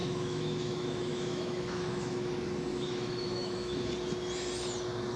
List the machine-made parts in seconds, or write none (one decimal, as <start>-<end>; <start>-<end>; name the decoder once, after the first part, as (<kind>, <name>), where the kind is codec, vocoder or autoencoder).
0.0-2.3 (autoencoder, DAC-VAE); 2.7-3.9